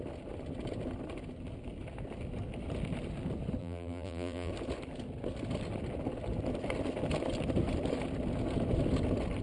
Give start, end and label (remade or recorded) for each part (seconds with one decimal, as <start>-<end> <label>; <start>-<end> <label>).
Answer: 0.0-3.6 recorded; 3.6-4.5 remade; 4.5-9.4 recorded